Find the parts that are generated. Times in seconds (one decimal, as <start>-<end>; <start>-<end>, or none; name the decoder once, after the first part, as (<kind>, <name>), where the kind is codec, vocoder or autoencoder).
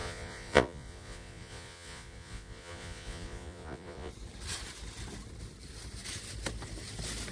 0.0-4.1 (vocoder, Vocos)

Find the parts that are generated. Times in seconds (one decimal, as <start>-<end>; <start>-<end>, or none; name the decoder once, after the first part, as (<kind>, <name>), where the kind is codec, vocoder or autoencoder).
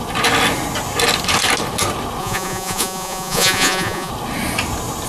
2.2-4.1 (vocoder, Vocos)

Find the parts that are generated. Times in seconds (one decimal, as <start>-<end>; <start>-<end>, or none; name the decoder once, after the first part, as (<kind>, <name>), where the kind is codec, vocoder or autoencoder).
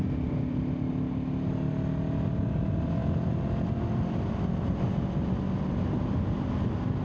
none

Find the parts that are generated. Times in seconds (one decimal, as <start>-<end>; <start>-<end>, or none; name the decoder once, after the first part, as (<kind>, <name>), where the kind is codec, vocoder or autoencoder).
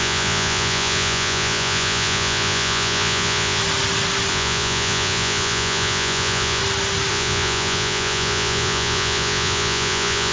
0.0-3.6 (vocoder, Vocos); 4.3-6.6; 7.1-10.3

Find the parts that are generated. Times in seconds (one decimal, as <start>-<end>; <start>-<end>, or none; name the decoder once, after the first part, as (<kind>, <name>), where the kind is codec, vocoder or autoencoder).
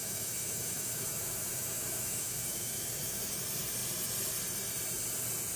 0.0-3.4 (autoencoder, DAC-VAE)